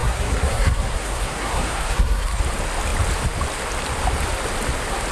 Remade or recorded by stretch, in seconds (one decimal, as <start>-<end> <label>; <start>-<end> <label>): 0.0-2.4 remade; 2.4-5.1 recorded